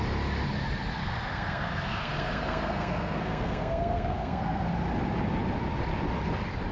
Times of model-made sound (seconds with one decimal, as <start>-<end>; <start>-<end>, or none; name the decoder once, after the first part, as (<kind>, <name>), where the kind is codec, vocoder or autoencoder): 1.0-4.7 (codec, SNAC)